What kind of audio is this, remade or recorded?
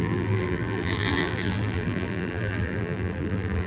remade